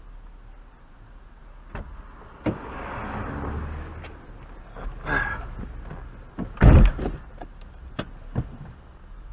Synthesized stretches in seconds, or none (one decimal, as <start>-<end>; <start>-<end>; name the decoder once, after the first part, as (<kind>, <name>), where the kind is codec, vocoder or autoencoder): none